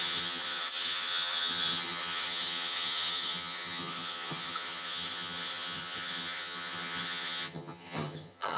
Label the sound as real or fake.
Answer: fake